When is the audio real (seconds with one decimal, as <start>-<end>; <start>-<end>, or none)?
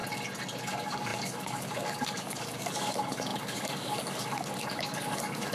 0.0-0.7